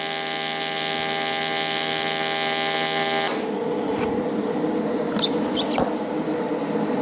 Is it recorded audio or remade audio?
recorded